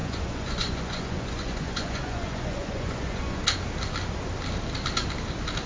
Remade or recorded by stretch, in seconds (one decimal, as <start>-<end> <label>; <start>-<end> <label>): 0.0-3.4 remade; 3.4-5.7 recorded